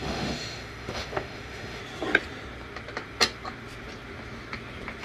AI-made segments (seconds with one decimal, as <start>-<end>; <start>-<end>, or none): 0.0-1.8